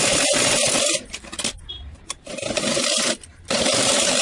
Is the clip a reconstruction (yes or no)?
yes